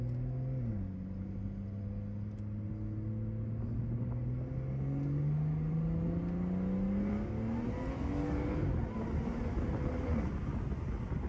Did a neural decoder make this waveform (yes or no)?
no